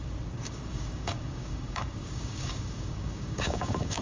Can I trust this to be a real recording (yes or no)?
no